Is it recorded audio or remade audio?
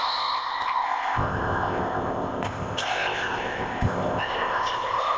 remade